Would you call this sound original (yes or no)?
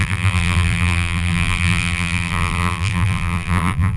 no